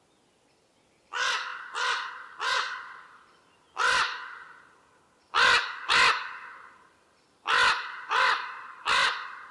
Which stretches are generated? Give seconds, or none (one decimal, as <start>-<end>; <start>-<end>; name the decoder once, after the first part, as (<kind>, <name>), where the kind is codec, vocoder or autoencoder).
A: none